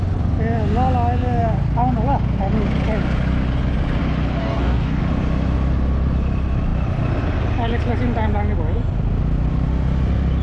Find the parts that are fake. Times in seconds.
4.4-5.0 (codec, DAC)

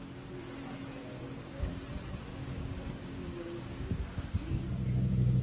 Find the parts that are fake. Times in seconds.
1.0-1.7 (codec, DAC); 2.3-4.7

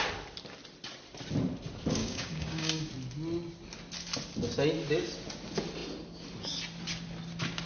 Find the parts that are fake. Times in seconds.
2.0-2.9 (codec, DAC)